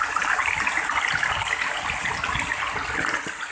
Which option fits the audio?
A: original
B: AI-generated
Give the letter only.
A